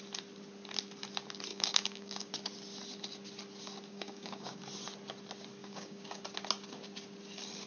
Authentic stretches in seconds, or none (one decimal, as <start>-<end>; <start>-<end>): 0.0-1.5; 2.3-3.9; 4.6-5.6; 6.2-7.7